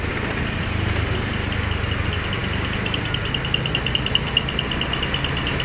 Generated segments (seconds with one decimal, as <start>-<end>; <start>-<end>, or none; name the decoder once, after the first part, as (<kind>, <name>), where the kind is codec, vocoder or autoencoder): none